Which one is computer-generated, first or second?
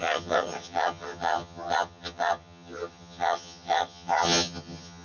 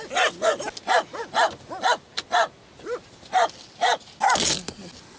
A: first